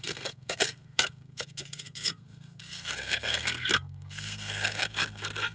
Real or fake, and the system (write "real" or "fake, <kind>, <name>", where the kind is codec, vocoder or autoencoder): fake, codec, SNAC